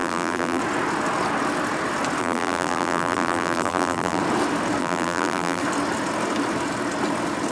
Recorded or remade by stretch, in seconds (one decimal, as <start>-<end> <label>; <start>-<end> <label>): 0.0-0.6 remade; 0.6-2.2 recorded; 2.2-4.2 remade; 4.2-4.8 recorded; 4.8-5.6 remade; 5.6-7.5 recorded